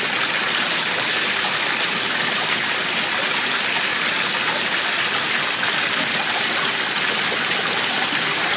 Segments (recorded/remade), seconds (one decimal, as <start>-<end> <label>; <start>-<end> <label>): 0.0-8.6 recorded